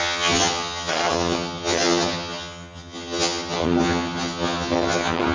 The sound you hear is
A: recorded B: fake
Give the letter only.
B